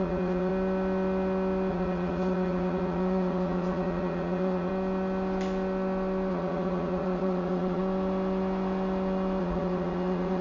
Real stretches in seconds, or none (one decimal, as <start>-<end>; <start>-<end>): 0.5-1.7; 4.7-6.3; 7.8-9.4